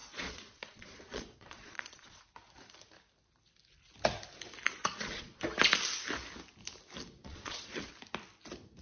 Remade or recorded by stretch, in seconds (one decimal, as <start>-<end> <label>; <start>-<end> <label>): 0.0-2.2 remade; 2.2-4.8 recorded; 4.8-5.4 remade; 5.4-7.2 recorded; 7.2-7.9 remade; 7.9-8.8 recorded